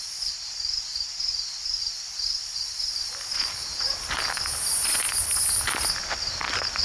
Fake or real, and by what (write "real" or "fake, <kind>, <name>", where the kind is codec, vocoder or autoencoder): real